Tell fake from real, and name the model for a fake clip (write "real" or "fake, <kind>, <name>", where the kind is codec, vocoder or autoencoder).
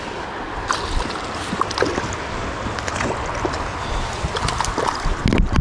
real